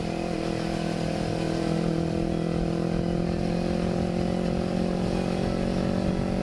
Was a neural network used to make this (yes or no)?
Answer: no